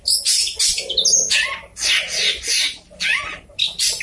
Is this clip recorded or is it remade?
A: recorded